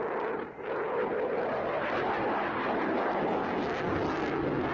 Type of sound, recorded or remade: recorded